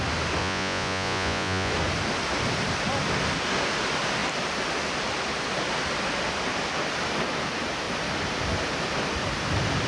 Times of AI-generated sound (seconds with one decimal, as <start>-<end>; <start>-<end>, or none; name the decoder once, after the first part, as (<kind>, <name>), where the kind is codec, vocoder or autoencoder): 0.4-1.7 (vocoder, Vocos)